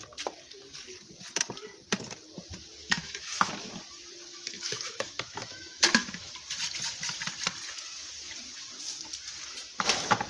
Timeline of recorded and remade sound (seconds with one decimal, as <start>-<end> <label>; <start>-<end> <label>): 0.0-2.8 recorded; 2.8-3.5 remade; 3.5-4.3 recorded; 4.3-6.3 remade; 6.3-10.3 recorded